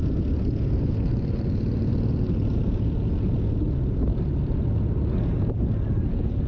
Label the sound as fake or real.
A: real